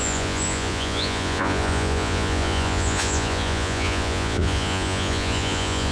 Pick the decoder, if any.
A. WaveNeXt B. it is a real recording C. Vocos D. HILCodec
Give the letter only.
C